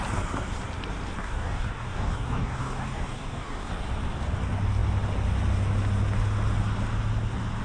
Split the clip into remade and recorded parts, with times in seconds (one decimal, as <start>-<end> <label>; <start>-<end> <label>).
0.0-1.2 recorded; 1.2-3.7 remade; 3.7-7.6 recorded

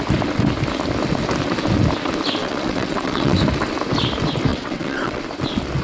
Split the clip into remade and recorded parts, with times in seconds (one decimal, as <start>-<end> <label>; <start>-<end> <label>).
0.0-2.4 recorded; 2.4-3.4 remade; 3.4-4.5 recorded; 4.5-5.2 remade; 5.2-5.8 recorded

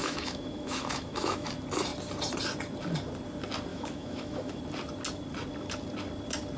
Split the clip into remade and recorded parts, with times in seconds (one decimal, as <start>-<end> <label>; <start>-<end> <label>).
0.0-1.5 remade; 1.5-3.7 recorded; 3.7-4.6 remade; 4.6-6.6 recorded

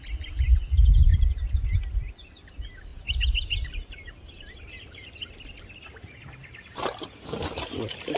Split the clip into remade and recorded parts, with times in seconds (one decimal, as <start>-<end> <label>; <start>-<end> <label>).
0.0-1.1 recorded; 1.1-1.8 remade; 1.8-2.9 recorded; 2.9-4.4 remade; 4.4-6.4 recorded; 6.4-8.2 remade